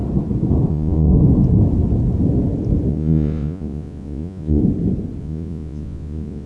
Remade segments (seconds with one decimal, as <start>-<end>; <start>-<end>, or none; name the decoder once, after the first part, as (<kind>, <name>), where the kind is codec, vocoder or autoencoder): 0.7-1.1 (vocoder, Vocos); 2.9-4.6; 5.2-6.5